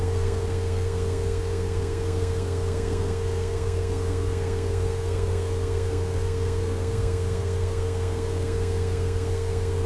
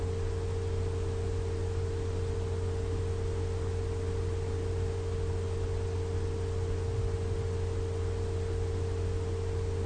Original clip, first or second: second